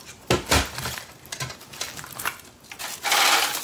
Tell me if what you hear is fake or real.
real